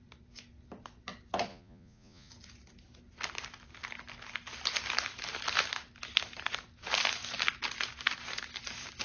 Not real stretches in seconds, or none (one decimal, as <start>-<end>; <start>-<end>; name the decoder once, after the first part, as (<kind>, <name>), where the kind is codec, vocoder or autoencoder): 1.5-2.3 (vocoder, Vocos)